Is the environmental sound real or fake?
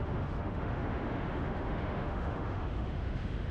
fake